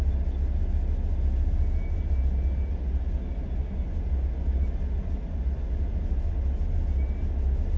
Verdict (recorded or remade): recorded